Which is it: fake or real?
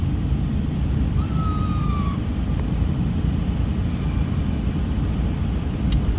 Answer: real